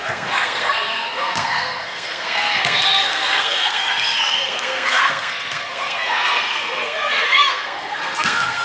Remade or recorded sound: remade